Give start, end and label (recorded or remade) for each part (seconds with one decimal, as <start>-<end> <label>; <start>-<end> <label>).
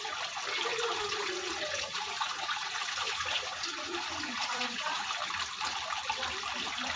0.0-0.9 recorded; 0.9-5.1 remade; 5.1-7.0 recorded